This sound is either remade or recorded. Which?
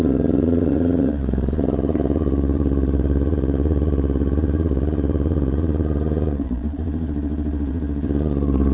remade